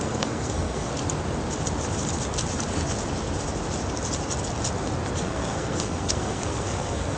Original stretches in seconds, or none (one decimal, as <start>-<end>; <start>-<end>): 0.9-5.2